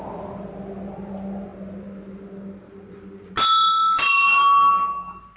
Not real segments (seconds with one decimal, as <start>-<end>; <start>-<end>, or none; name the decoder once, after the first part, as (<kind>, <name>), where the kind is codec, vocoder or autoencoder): none